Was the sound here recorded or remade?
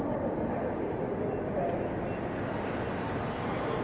recorded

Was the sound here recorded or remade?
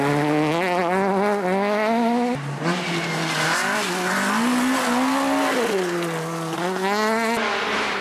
recorded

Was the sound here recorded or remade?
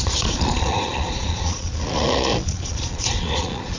remade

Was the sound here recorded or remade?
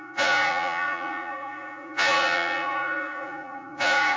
remade